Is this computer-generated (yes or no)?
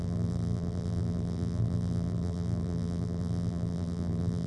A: yes